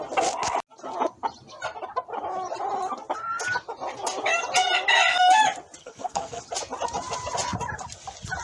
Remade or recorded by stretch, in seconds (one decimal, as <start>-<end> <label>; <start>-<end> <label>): 0.0-5.8 recorded; 5.8-6.4 remade; 6.4-8.4 recorded